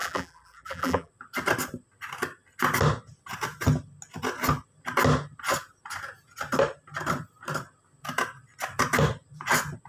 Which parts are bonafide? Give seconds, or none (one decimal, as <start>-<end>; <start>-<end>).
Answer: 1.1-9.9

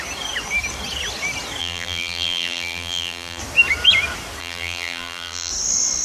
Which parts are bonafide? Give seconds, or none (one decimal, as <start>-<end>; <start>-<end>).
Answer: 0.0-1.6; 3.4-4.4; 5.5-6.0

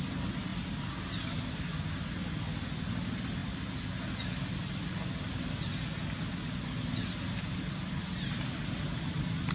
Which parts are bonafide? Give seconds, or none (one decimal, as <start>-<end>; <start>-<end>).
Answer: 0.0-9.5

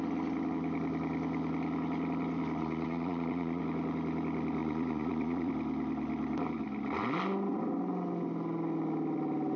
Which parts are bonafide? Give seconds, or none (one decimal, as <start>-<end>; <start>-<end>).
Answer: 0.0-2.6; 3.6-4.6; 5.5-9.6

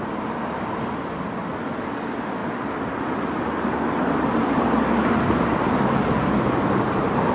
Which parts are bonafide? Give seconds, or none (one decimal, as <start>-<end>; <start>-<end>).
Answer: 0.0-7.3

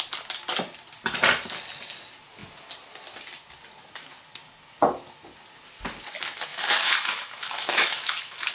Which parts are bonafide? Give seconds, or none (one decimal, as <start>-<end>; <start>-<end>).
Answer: 0.0-6.5

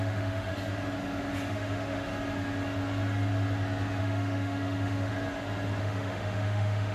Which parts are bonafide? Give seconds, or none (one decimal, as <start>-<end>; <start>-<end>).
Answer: 0.5-1.5; 2.1-4.0; 5.1-5.8